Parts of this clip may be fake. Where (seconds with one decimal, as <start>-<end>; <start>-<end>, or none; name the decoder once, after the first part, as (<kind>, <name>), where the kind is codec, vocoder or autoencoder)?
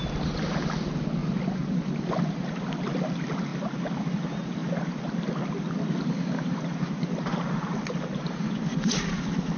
none